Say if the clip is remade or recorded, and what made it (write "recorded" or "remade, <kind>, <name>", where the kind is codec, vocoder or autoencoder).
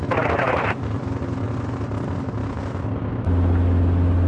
recorded